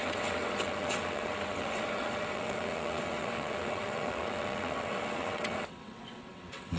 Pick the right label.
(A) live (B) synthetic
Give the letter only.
B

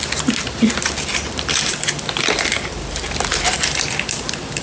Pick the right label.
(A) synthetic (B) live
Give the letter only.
B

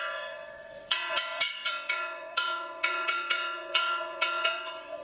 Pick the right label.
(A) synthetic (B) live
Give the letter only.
A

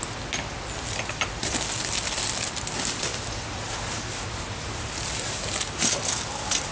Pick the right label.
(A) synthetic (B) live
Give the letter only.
B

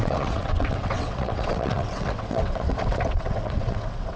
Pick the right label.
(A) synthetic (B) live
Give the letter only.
A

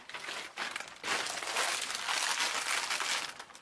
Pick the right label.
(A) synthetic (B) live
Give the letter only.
B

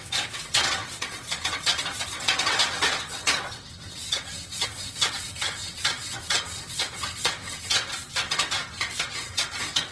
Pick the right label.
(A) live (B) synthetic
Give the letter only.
B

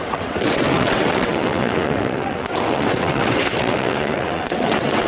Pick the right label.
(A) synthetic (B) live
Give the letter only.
A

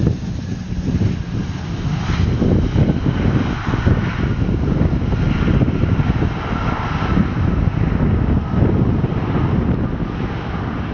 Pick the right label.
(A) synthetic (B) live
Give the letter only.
B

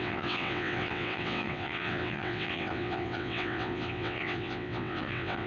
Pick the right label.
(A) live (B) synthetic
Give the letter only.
B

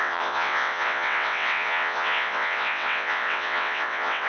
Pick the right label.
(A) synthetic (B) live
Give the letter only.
A